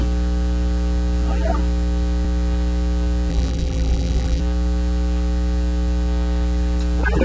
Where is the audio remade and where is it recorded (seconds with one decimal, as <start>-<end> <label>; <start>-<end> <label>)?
0.0-3.3 recorded; 3.3-4.4 remade; 4.4-7.2 recorded

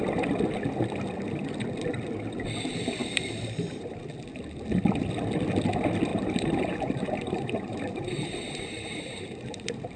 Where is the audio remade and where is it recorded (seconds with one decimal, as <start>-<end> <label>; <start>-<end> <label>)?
0.0-3.0 recorded; 3.0-4.0 remade; 4.0-6.1 recorded; 6.1-10.0 remade